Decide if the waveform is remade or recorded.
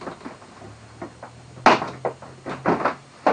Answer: recorded